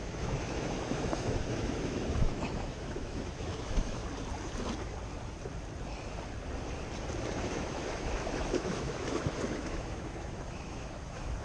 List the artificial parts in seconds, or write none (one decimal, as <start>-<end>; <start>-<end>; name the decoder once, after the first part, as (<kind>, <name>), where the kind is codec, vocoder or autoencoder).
0.0-4.0 (autoencoder, DAC-VAE); 7.4-11.4